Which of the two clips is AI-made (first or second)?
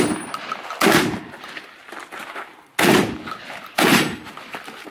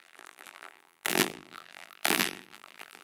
second